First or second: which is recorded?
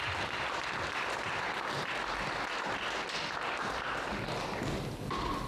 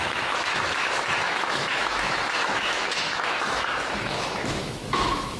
first